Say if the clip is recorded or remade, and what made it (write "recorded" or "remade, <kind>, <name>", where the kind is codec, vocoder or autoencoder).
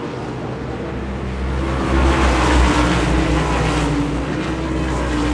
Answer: recorded